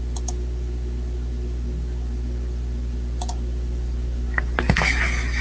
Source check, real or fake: real